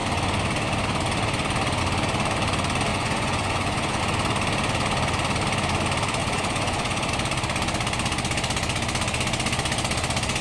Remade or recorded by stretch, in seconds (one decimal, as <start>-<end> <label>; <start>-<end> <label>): 0.0-2.9 recorded; 2.9-4.0 remade; 4.0-6.2 recorded; 6.2-7.1 remade; 7.1-10.4 recorded

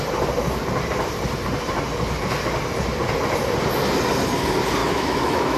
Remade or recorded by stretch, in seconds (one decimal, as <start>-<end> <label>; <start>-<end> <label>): 0.0-4.8 recorded; 4.8-5.6 remade

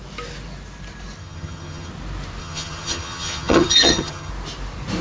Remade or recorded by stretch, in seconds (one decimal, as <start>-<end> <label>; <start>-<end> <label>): 0.0-1.2 recorded; 1.2-1.9 remade; 1.9-2.4 recorded; 2.4-4.3 remade; 4.3-5.0 recorded

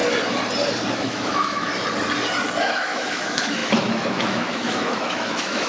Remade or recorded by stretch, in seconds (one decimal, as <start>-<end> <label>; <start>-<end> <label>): 0.0-0.9 recorded; 0.9-1.7 remade; 1.7-2.6 recorded; 2.6-5.7 remade

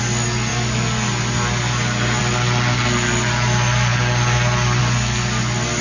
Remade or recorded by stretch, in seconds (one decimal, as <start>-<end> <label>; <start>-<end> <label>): 0.0-5.8 recorded

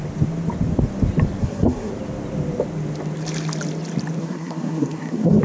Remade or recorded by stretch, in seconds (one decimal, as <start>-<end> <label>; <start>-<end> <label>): 0.0-1.4 recorded; 1.4-1.9 remade; 1.9-4.2 recorded; 4.2-5.4 remade

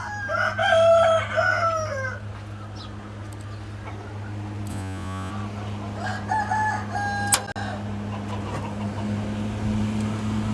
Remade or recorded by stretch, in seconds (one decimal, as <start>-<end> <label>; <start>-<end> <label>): 0.0-4.7 recorded; 4.7-5.3 remade; 5.3-10.5 recorded